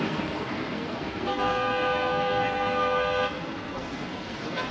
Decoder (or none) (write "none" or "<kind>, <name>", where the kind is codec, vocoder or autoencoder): codec, SNAC